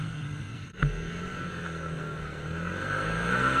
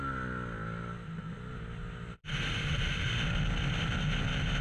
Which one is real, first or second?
second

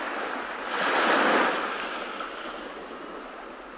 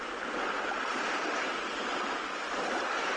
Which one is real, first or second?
first